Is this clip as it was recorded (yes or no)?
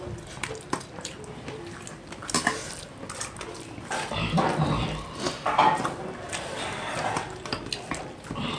yes